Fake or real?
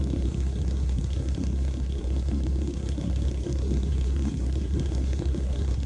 fake